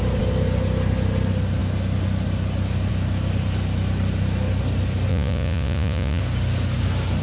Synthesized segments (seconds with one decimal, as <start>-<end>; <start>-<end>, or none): 5.1-6.2